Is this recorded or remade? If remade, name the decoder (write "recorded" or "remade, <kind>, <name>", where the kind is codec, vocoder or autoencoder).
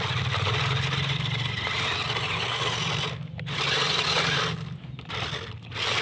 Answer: recorded